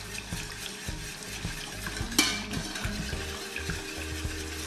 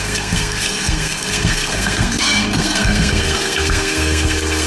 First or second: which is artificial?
second